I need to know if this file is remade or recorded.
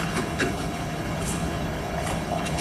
remade